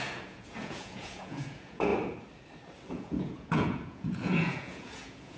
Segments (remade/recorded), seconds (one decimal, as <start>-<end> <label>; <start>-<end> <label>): 0.0-1.9 remade; 1.9-2.9 recorded; 2.9-5.4 remade